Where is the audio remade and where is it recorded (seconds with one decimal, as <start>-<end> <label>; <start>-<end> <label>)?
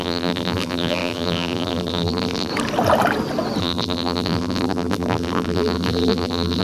0.0-2.5 remade; 2.5-3.6 recorded; 3.6-6.6 remade